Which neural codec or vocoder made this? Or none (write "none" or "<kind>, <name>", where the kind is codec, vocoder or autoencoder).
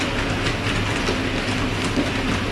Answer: none